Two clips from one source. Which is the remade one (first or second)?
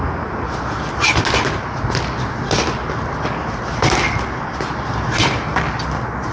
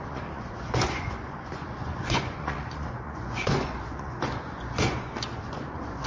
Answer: second